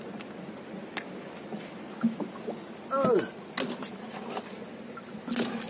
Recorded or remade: recorded